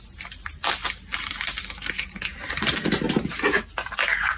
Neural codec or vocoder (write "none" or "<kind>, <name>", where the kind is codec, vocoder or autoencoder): vocoder, BigVGAN v2